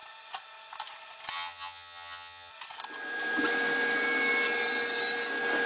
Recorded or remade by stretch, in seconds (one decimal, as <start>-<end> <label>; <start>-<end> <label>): 0.0-1.3 recorded; 1.3-2.5 remade; 2.5-5.7 recorded

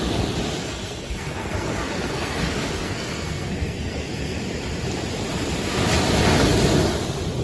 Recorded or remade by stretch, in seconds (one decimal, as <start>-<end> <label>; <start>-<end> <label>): 0.0-0.6 recorded; 0.6-4.4 remade; 4.4-7.4 recorded

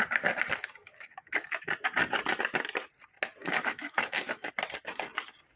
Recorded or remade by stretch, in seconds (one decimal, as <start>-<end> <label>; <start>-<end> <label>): 0.0-0.8 recorded; 0.8-1.7 remade; 1.7-3.4 recorded; 3.4-4.5 remade; 4.5-5.6 recorded

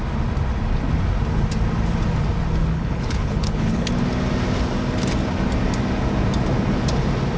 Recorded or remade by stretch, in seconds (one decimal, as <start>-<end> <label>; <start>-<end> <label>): 0.0-2.6 recorded; 2.6-3.9 remade; 3.9-7.4 recorded

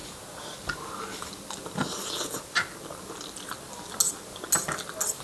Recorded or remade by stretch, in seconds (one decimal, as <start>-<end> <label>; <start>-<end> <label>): 0.0-5.2 recorded

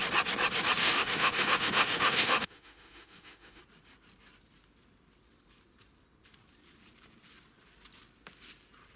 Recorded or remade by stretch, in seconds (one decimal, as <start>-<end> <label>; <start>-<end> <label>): 0.0-0.8 recorded; 0.8-3.6 remade; 3.6-9.0 recorded